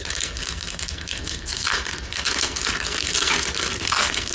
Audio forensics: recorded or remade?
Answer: remade